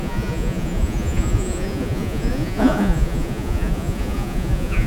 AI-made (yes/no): yes